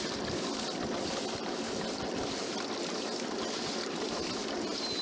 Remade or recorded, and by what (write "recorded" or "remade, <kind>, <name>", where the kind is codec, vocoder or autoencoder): recorded